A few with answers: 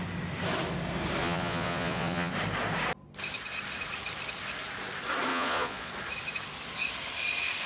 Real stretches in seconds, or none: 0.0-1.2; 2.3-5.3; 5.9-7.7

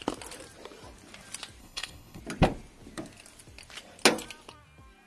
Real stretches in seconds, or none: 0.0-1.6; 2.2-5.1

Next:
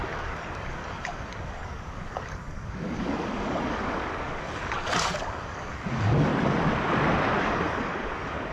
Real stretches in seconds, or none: 6.3-7.4

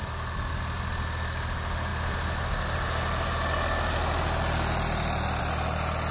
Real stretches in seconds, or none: 0.0-6.1